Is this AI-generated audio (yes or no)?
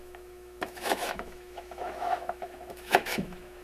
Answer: yes